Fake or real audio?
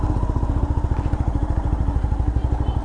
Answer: real